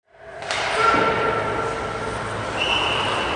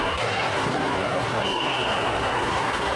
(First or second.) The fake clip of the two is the second